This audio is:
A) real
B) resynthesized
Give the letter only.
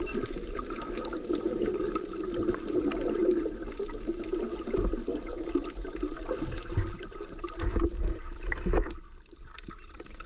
A